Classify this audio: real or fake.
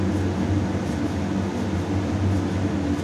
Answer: real